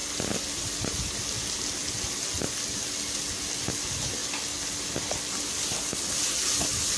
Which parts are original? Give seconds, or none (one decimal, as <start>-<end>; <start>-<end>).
0.0-7.0